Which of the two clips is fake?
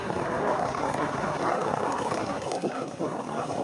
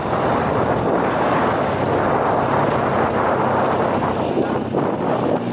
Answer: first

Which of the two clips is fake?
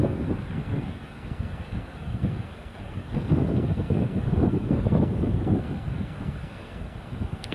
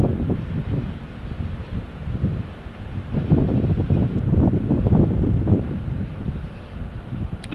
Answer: first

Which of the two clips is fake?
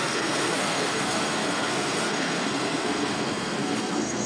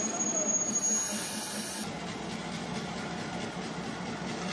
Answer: first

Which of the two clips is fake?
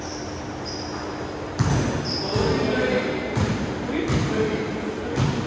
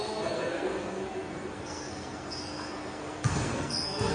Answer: second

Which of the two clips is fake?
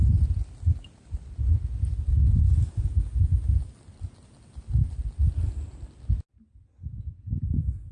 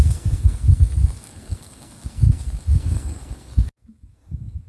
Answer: second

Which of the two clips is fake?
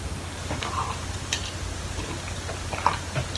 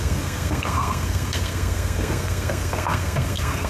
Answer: second